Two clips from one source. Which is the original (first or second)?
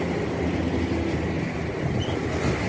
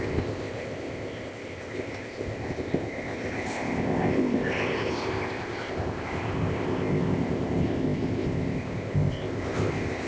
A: first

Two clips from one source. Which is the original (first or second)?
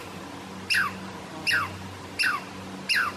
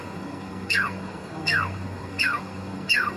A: first